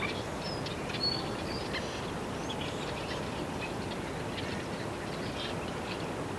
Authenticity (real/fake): real